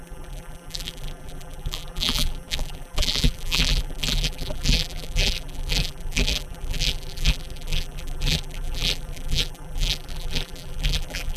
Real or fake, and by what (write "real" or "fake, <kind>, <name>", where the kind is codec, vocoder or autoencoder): fake, vocoder, BigVGAN v2